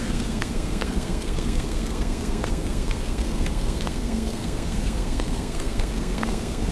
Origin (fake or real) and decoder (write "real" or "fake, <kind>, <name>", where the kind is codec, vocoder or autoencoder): fake, codec, SNAC